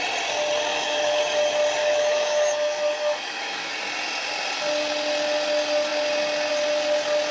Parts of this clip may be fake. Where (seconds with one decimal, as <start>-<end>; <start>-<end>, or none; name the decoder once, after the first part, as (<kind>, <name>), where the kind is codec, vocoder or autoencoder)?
0.7-1.2 (autoencoder, DAC-VAE); 1.8-3.7